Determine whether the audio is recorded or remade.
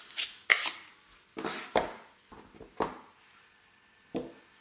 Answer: recorded